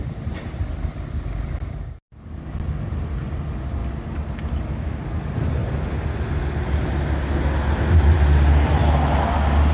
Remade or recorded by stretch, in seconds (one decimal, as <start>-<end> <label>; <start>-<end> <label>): 0.0-9.7 recorded